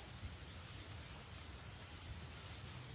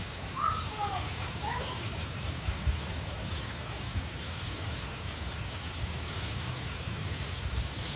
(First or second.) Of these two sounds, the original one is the first